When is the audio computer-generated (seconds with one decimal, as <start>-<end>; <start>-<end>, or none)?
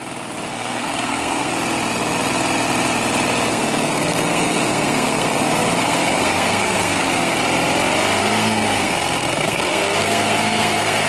0.5-1.5; 3.5-7.4; 8.2-11.1